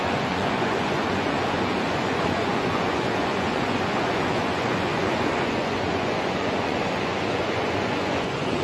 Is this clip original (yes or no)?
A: no